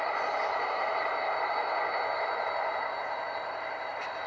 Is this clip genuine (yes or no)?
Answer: yes